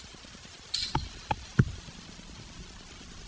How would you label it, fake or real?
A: real